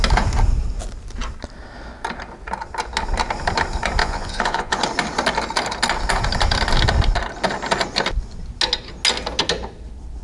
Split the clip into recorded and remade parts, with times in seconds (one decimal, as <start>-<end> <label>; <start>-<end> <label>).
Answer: 0.0-4.0 recorded; 4.0-4.8 remade; 4.8-10.2 recorded